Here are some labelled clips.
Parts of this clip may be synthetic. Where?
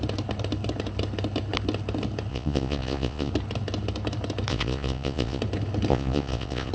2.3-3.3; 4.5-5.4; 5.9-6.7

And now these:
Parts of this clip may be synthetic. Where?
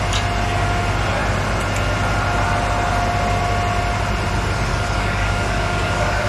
4.7-6.3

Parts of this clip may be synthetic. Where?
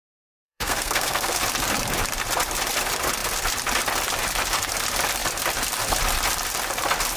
0.0-1.4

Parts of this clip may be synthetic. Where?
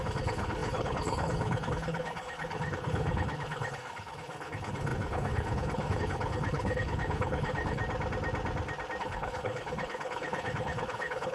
0.0-7.8; 9.0-11.3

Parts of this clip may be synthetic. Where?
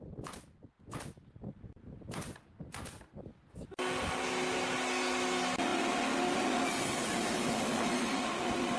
none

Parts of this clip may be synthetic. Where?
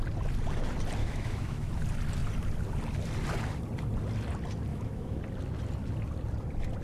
1.0-1.7; 4.7-5.2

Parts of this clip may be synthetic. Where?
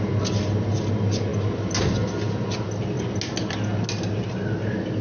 none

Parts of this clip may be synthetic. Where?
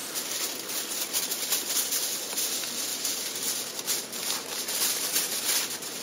none